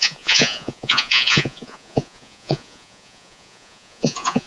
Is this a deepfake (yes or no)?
yes